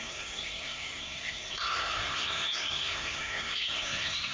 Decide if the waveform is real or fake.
fake